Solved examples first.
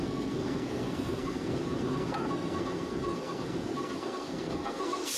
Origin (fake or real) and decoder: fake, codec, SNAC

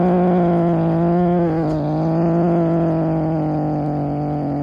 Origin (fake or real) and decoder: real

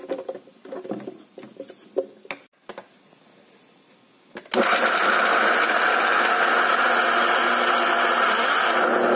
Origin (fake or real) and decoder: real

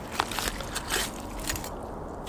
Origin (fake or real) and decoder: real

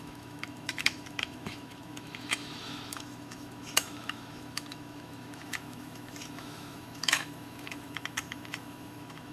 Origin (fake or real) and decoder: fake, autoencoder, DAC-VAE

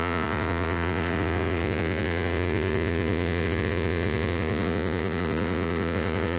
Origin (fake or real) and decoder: fake, vocoder, Vocos